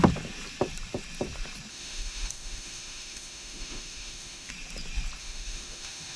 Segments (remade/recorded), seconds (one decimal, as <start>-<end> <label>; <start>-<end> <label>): 0.0-1.7 recorded; 1.7-4.5 remade; 4.5-5.2 recorded; 5.2-6.2 remade